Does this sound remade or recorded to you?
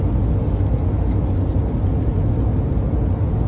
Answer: recorded